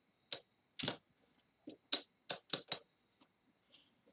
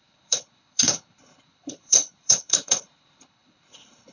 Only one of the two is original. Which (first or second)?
first